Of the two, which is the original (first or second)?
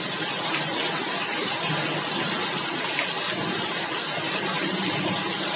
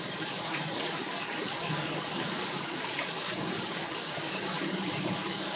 first